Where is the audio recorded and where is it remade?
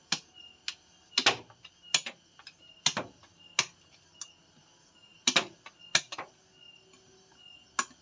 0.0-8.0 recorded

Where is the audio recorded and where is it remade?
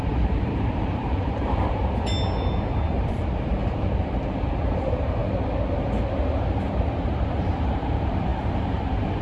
0.0-1.8 remade; 1.8-2.9 recorded; 2.9-5.2 remade; 5.2-6.7 recorded; 6.7-8.3 remade; 8.3-9.2 recorded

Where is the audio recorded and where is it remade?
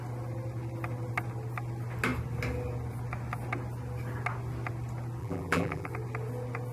0.0-5.2 recorded; 5.2-5.9 remade; 5.9-6.7 recorded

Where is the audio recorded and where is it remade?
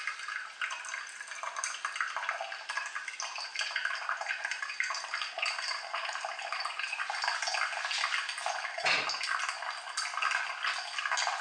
0.0-3.5 recorded; 3.5-7.0 remade; 7.0-11.4 recorded